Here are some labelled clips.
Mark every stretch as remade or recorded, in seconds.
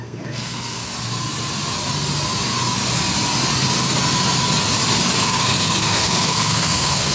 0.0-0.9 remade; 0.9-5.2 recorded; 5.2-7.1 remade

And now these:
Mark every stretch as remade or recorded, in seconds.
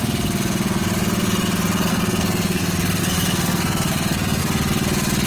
0.0-1.9 recorded; 1.9-2.6 remade; 2.6-3.0 recorded; 3.0-4.4 remade; 4.4-5.3 recorded